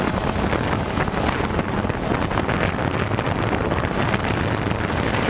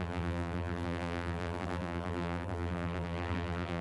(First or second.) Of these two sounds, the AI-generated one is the second